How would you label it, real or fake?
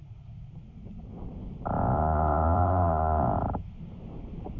real